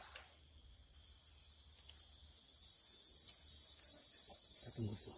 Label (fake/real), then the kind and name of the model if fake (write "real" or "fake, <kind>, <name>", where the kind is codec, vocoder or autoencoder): real